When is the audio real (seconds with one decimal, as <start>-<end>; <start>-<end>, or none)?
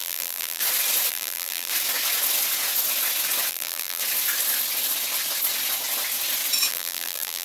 0.6-1.1; 1.7-3.5; 4.0-6.7